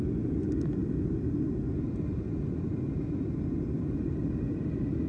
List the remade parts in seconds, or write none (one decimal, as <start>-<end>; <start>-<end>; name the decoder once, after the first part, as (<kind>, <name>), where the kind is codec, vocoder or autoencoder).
none